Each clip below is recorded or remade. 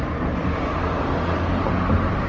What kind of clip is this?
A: recorded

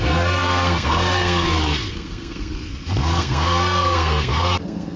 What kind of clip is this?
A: remade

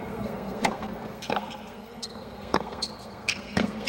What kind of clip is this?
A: remade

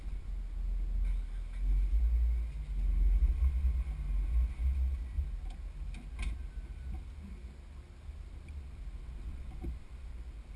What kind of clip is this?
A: recorded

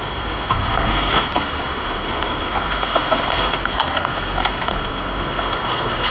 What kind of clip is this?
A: remade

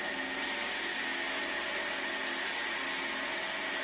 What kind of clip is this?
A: recorded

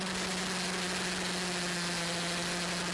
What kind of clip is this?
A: recorded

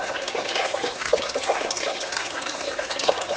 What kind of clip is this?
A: remade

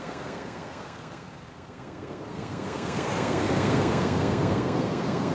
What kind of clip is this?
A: remade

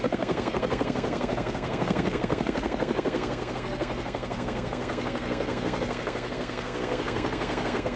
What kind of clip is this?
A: remade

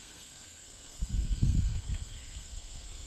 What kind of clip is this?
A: remade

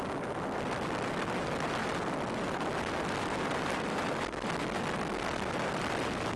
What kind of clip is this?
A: recorded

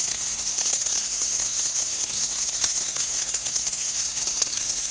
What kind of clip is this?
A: remade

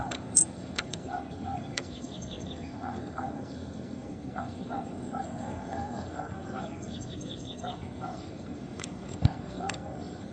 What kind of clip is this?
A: remade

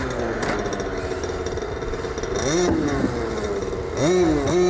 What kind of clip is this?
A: recorded